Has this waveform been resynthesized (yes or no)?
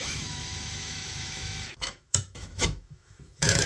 yes